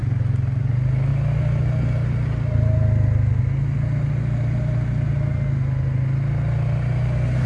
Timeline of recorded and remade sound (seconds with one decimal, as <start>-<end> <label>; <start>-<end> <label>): 0.0-7.5 recorded